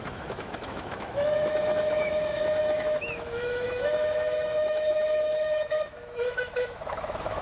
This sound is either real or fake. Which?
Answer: fake